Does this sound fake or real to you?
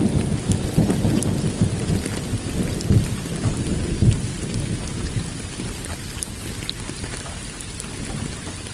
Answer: real